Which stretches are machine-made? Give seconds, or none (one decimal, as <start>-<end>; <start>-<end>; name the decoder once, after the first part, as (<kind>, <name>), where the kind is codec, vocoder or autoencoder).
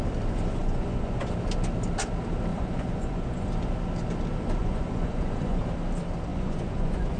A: 0.6-1.2 (vocoder, Vocos); 2.5-3.5; 4.6-5.6; 6.3-7.2